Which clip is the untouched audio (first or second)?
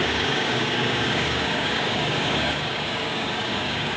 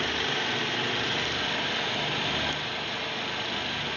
second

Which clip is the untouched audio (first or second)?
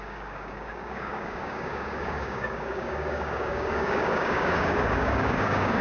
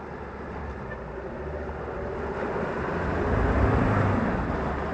second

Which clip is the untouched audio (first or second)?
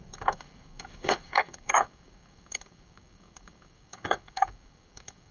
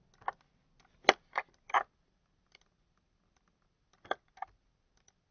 second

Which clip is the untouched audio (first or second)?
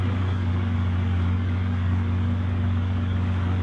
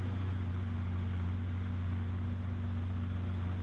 second